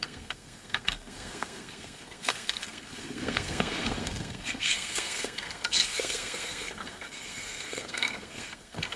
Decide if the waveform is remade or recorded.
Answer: remade